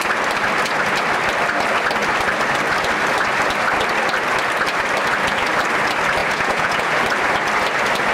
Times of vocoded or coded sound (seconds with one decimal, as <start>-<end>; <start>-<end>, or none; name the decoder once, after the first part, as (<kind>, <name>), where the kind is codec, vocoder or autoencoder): 6.2-7.0 (vocoder, Vocos)